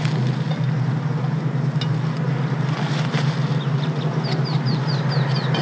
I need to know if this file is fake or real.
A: real